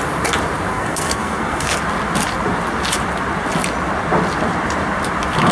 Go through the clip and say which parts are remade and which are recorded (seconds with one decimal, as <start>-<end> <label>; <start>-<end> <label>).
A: 0.0-0.7 recorded; 0.7-1.8 remade; 1.8-5.5 recorded